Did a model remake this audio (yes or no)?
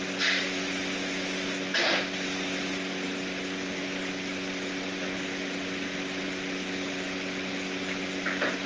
no